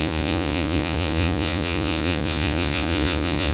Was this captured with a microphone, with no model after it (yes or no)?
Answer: no